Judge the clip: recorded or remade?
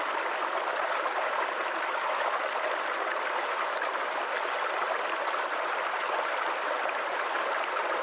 recorded